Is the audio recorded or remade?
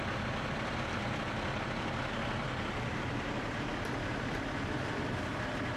remade